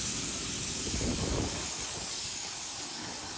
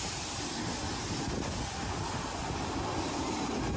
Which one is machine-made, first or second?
first